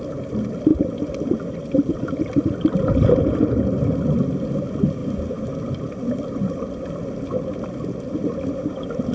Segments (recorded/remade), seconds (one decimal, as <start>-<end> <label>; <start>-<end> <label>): 0.0-9.1 recorded